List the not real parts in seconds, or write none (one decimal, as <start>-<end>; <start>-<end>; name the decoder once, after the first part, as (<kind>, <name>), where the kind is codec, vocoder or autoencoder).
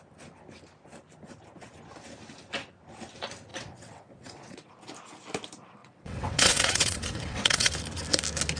3.5-4.7 (vocoder, WaveNeXt); 5.8-7.7